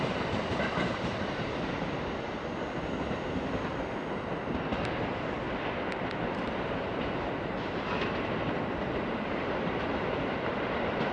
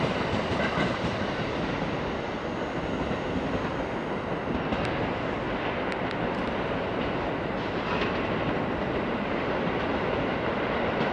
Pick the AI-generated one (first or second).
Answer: first